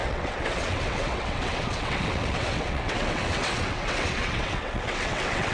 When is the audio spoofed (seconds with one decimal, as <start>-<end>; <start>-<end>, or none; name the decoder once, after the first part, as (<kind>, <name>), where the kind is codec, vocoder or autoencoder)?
0.0-5.5 (vocoder, WaveNeXt)